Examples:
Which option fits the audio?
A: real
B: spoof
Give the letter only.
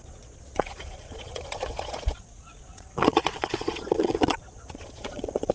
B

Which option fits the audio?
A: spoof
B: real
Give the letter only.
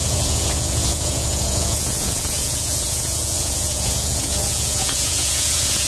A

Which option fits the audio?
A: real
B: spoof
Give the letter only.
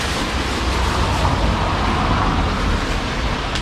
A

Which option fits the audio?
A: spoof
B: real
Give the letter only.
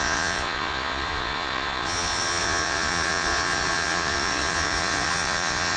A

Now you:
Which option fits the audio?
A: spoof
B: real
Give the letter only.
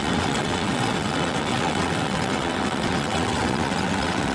A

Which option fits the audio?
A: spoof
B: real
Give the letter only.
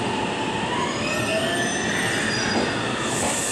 B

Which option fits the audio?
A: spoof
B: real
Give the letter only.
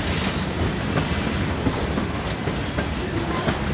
B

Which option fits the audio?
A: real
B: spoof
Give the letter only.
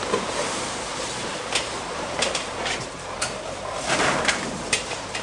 B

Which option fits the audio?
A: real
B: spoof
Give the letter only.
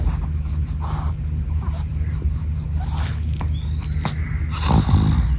A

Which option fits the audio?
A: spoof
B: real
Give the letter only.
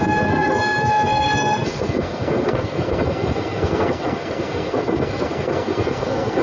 A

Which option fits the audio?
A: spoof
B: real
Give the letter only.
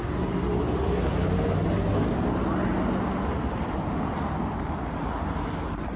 B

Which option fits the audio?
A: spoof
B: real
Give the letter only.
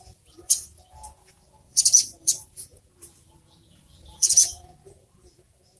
A